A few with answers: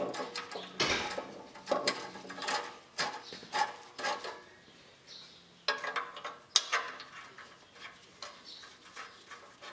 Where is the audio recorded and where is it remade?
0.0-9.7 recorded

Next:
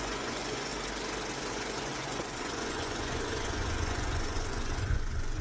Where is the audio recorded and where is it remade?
0.0-0.7 remade; 0.7-1.5 recorded; 1.5-5.4 remade

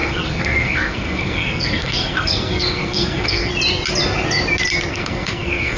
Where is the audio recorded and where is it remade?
0.0-3.5 remade; 3.5-4.9 recorded; 4.9-5.8 remade